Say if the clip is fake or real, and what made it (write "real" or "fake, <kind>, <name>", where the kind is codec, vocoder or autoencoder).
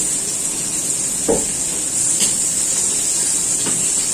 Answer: real